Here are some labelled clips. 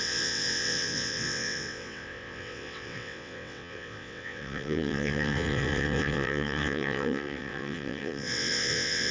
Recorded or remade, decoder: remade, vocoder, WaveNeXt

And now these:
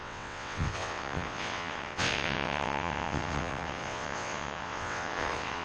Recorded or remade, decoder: remade, vocoder, WaveNeXt